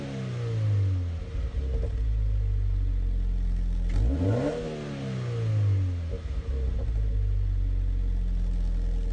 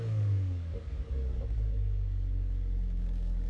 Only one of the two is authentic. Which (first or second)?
first